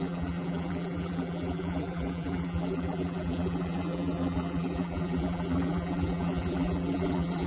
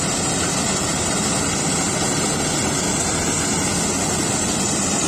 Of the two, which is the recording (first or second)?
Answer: second